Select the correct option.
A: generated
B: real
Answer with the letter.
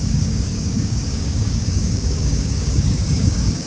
A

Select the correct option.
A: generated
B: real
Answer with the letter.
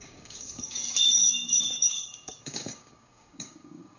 A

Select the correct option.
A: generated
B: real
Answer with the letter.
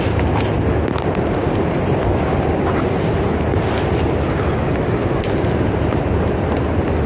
B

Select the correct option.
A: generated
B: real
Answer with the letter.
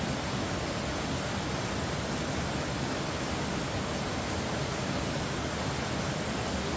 B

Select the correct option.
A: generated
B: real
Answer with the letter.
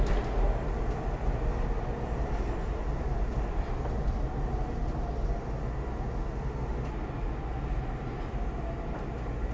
B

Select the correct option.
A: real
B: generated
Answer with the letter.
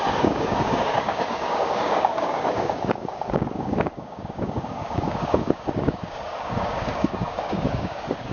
B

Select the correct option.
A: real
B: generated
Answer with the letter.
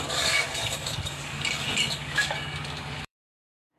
B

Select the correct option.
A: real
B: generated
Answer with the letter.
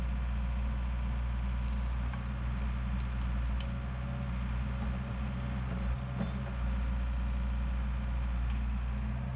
A